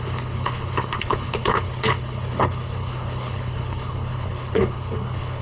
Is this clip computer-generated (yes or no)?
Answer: yes